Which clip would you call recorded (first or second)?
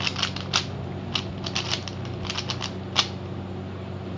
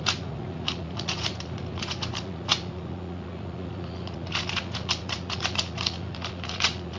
first